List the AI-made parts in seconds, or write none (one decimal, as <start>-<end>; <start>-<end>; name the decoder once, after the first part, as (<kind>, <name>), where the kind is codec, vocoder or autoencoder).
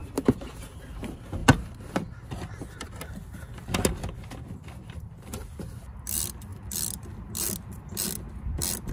0.9-1.4 (vocoder, BigVGAN v2); 5.6-6.5